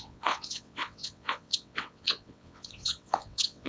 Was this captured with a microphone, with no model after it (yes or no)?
no